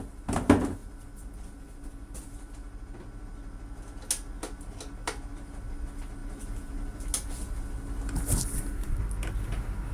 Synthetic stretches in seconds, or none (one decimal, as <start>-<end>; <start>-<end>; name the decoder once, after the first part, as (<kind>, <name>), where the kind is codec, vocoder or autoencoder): none

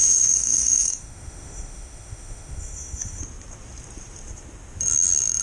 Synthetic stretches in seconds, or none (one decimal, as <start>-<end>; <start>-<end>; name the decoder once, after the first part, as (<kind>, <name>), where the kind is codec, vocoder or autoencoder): 0.0-3.2 (autoencoder, DAC-VAE)

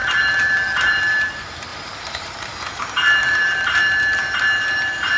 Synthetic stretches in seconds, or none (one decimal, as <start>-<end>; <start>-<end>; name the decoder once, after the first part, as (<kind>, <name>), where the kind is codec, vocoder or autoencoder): 0.0-1.0 (vocoder, BigVGAN v2); 1.7-2.5; 3.2-3.8

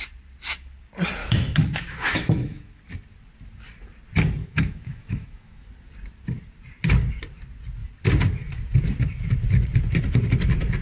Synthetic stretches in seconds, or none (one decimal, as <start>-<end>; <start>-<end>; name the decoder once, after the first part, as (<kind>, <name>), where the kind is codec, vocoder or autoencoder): 1.2-2.8 (autoencoder, DAC-VAE); 4.4-5.6

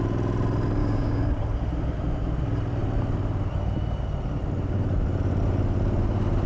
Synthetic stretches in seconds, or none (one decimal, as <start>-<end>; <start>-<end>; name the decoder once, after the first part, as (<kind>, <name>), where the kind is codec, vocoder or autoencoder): 0.8-1.4 (codec, DAC)

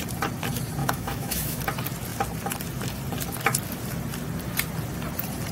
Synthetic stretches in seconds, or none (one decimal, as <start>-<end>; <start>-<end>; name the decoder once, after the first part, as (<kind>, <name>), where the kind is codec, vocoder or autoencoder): 0.8-1.6 (autoencoder, DAC-VAE)

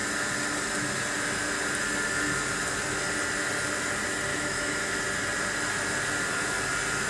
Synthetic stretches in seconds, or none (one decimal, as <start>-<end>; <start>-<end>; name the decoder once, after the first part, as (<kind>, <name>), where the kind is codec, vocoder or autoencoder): 4.3-5.0 (autoencoder, DAC-VAE)